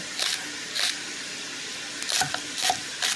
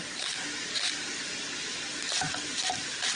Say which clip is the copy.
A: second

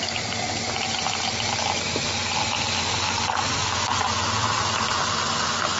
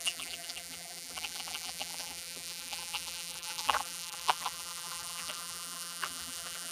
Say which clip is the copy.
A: second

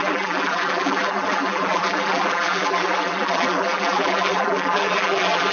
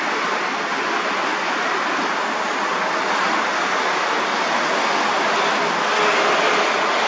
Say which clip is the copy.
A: first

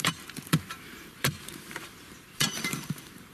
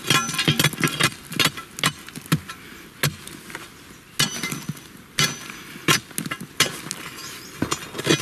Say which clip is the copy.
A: first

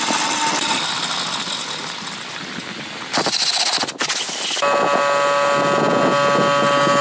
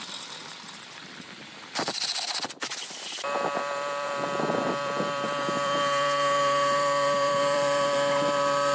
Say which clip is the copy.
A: second